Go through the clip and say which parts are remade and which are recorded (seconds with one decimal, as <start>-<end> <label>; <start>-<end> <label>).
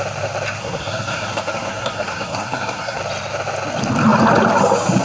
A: 0.0-0.6 recorded; 0.6-3.0 remade; 3.0-5.0 recorded